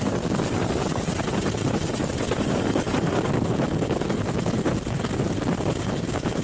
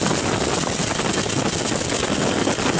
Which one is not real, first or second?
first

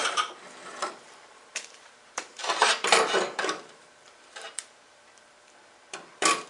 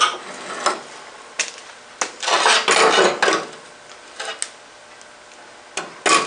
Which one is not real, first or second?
first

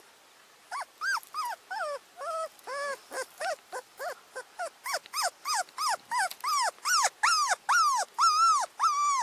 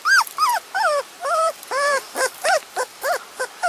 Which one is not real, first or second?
second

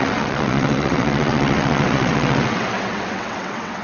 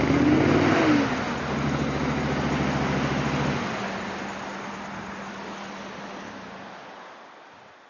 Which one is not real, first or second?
first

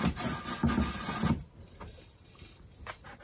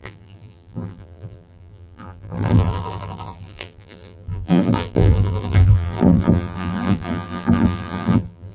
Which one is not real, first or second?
second